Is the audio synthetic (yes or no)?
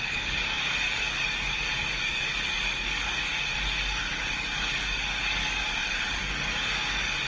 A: yes